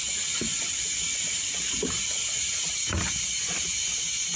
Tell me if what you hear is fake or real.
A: real